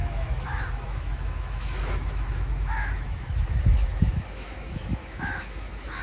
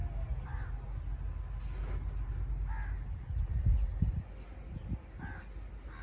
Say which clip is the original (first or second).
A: second